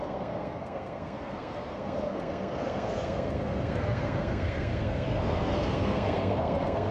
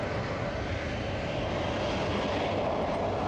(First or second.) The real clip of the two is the second